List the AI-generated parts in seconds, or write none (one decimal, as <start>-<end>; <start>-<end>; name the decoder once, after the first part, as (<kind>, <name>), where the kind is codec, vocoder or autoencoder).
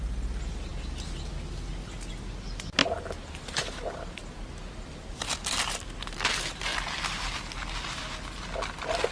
none